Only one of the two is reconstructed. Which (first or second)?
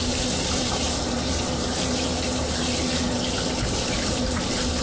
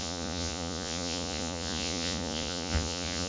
second